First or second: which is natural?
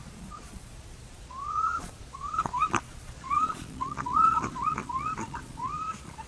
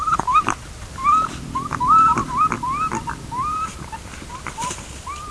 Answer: second